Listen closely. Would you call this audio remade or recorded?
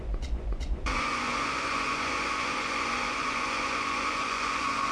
remade